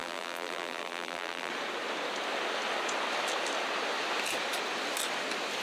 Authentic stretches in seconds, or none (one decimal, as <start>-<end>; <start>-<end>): 1.5-5.6